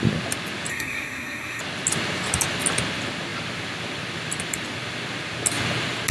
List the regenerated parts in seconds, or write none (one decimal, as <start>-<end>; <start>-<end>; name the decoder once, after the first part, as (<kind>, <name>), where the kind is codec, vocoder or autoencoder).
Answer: 0.7-1.6 (codec, SNAC)